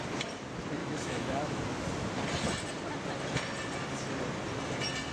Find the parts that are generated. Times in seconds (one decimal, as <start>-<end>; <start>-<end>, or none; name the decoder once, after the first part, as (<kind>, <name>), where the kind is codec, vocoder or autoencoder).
0.8-1.6 (autoencoder, DAC-VAE)